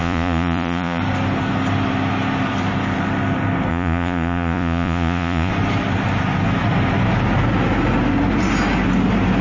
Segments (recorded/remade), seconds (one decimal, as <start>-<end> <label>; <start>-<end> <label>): 0.0-1.0 remade; 1.0-3.7 recorded; 3.7-5.5 remade; 5.5-9.4 recorded